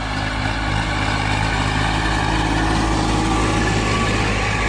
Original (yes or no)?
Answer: yes